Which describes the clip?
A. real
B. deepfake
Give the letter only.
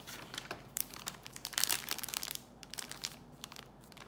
B